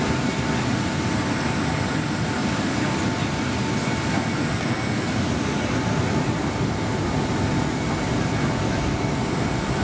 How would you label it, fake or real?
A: real